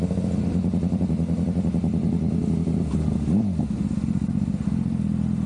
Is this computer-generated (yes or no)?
no